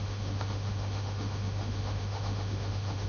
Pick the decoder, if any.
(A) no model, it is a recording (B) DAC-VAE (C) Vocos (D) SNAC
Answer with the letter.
B